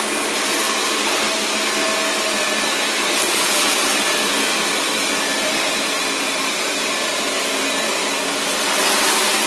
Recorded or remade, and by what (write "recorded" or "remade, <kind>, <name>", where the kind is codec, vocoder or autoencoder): recorded